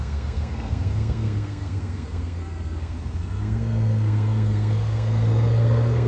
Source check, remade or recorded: remade